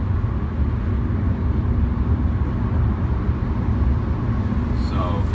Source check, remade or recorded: recorded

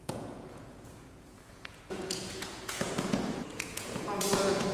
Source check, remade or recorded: remade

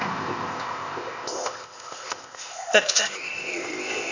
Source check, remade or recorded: remade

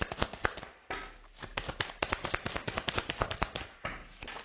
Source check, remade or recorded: recorded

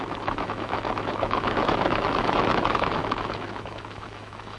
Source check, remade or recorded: remade